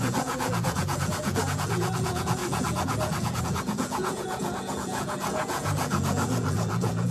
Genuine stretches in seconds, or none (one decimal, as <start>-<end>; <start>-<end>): none